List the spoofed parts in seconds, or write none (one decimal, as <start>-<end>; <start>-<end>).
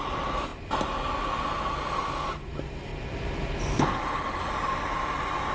none